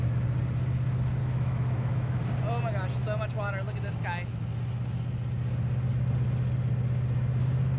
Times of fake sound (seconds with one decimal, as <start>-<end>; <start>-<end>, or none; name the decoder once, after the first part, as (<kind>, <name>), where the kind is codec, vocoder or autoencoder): 1.2-2.2 (autoencoder, DAC-VAE)